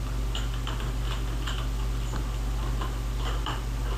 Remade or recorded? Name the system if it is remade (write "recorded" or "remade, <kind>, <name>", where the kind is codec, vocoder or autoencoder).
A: recorded